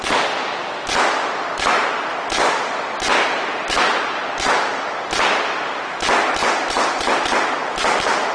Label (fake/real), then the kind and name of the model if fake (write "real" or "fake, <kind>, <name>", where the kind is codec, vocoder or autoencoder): real